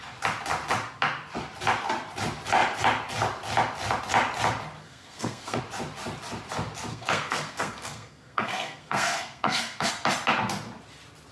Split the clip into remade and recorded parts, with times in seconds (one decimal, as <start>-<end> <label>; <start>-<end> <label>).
0.0-4.8 recorded; 4.8-5.6 remade; 5.6-6.9 recorded; 6.9-9.9 remade; 9.9-11.3 recorded